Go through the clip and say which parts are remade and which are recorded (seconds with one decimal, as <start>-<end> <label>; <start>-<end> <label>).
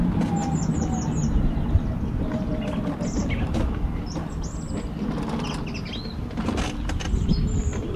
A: 0.0-8.0 recorded